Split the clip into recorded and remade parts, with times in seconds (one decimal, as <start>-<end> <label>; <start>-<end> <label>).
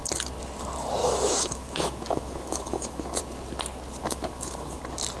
0.0-1.0 recorded; 1.0-3.2 remade; 3.2-4.0 recorded; 4.0-4.8 remade; 4.8-5.2 recorded